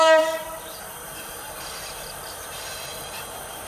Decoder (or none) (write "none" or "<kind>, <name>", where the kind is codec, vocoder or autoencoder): vocoder, BigVGAN v2